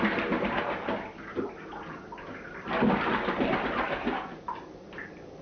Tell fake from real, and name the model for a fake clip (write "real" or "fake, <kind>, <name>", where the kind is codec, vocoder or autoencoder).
real